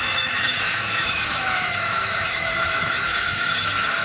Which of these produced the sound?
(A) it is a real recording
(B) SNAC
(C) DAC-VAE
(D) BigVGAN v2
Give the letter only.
C